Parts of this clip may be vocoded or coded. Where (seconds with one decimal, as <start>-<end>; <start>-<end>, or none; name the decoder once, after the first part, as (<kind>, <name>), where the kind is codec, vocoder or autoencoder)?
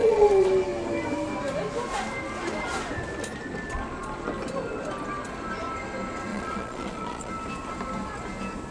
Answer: 0.0-0.5 (vocoder, Vocos); 6.3-7.3